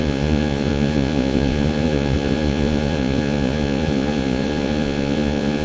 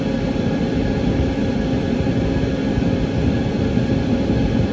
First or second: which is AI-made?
first